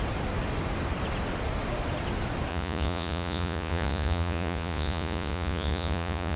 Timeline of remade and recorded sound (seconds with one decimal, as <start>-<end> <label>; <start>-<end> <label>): 0.0-2.5 recorded; 2.5-6.4 remade